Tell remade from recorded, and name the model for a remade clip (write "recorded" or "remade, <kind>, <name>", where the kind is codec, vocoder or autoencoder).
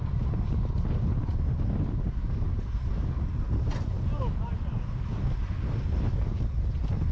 recorded